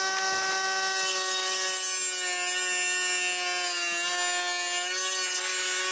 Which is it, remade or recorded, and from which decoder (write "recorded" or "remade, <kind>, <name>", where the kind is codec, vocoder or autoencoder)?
recorded